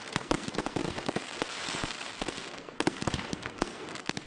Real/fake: fake